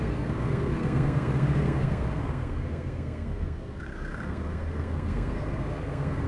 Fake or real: fake